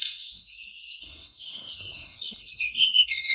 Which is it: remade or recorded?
remade